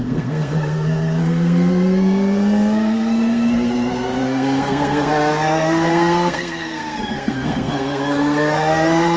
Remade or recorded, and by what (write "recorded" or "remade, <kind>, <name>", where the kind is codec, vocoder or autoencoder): remade, codec, SNAC